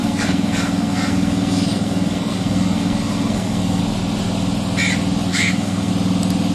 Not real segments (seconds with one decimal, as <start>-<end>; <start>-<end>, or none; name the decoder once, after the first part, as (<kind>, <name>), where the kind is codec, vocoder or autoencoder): 0.0-3.8 (codec, SNAC); 5.3-5.9